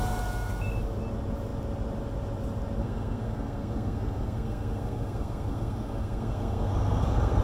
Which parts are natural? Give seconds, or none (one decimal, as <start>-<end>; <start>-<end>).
0.0-2.8